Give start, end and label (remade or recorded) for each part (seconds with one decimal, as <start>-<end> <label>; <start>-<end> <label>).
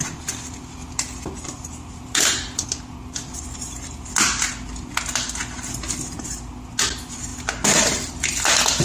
0.0-8.8 recorded